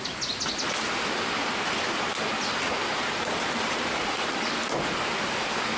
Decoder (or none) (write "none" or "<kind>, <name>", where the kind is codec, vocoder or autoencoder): none